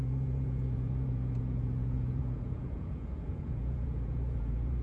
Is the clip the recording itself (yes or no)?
no